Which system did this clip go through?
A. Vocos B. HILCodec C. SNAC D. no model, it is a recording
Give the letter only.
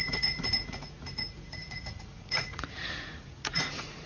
A